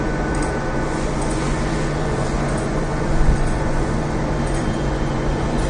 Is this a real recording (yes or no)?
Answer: no